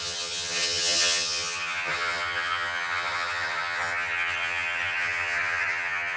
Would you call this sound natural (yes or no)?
no